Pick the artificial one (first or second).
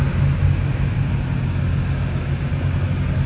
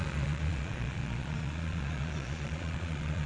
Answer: second